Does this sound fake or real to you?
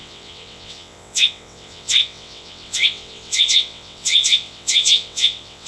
fake